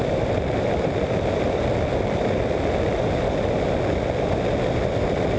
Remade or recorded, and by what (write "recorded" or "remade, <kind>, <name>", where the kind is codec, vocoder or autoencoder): recorded